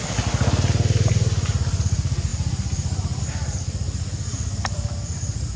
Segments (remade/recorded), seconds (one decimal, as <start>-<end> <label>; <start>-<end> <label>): 0.0-5.6 recorded